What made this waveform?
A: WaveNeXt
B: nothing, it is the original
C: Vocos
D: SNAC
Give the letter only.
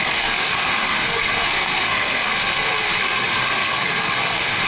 D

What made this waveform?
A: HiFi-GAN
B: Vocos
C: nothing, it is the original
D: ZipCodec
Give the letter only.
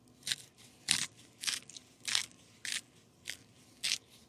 C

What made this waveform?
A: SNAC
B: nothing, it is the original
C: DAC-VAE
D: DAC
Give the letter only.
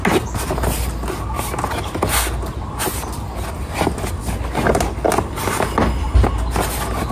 B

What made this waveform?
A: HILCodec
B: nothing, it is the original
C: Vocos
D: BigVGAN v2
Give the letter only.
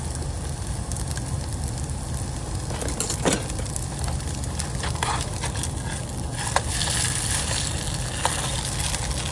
B